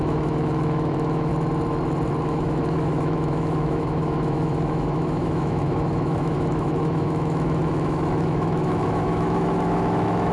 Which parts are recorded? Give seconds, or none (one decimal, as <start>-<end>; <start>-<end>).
1.3-2.2